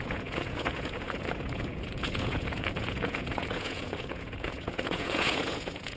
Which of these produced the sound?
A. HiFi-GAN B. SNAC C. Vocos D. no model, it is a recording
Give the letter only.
C